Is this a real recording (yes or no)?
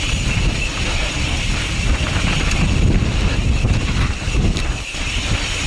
yes